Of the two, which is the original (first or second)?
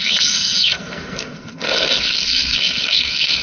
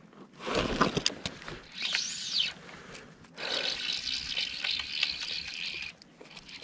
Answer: second